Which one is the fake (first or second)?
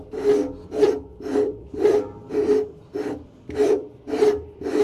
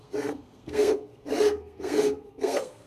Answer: second